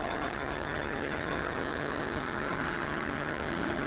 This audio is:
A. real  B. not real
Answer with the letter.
B